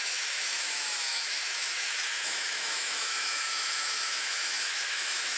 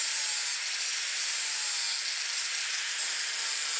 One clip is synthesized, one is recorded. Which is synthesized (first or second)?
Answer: first